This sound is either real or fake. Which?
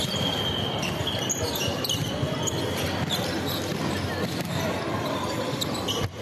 real